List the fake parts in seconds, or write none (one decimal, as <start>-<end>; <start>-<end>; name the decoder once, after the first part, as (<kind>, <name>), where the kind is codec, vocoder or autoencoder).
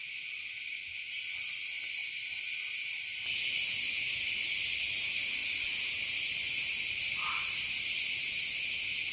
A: 2.0-2.6 (vocoder, BigVGAN v2); 5.4-8.3